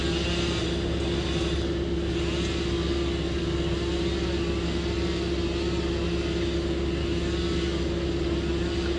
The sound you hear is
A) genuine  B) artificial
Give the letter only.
A